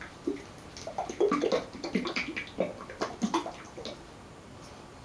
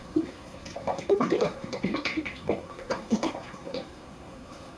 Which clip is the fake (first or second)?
second